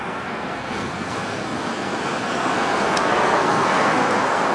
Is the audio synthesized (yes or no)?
yes